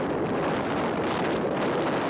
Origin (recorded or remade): recorded